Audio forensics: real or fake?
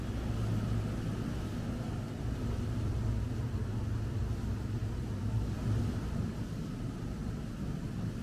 real